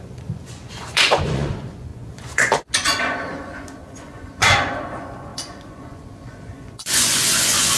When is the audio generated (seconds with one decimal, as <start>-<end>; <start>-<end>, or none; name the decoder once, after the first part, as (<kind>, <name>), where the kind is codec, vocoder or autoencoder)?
0.0-7.8 (vocoder, Vocos)